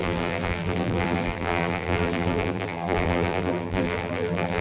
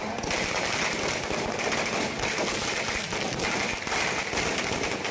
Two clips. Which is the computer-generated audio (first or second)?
first